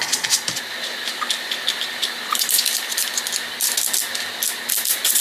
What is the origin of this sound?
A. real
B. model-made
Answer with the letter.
A